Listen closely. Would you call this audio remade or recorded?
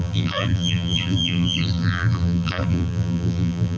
remade